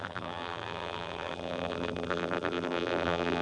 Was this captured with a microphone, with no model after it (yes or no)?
no